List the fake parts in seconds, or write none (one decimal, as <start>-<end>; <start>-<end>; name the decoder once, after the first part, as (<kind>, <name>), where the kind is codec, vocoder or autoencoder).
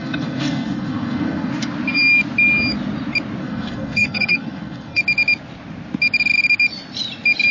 0.0-1.5 (codec, SNAC); 3.4-5.0